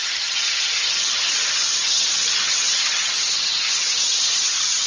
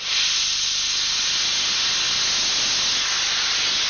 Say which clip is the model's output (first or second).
first